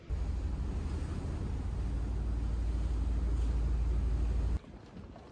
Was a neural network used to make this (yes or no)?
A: no